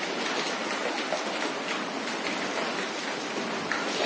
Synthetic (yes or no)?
no